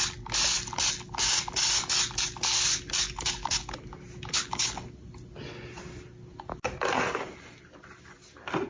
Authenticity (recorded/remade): recorded